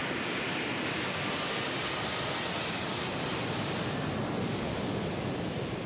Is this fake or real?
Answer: real